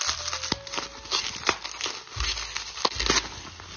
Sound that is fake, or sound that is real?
real